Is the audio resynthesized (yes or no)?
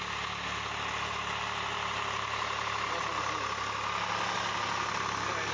no